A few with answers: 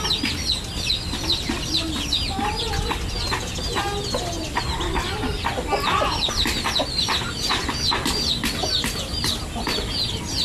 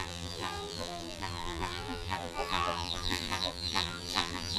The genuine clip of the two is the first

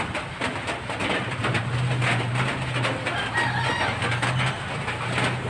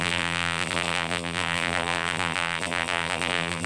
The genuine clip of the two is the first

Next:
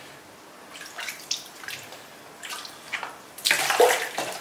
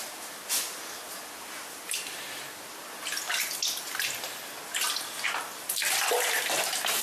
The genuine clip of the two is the second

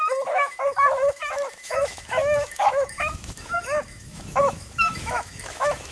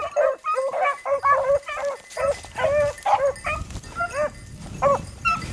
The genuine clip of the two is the second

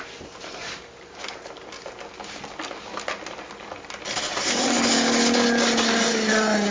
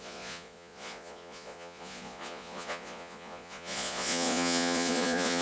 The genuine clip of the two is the first